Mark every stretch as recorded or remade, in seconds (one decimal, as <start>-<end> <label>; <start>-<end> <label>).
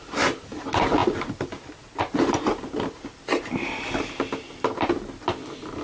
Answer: 0.0-5.8 recorded